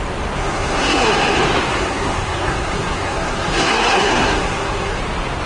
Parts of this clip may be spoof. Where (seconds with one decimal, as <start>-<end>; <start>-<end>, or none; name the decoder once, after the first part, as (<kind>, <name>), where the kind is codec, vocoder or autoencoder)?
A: 0.4-1.1 (codec, SNAC); 1.7-5.0